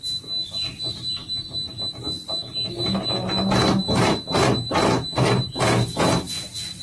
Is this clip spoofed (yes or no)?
no